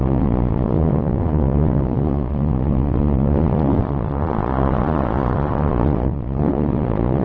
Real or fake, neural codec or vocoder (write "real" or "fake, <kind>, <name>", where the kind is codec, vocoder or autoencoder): fake, vocoder, Vocos